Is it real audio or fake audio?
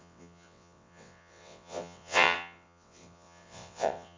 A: fake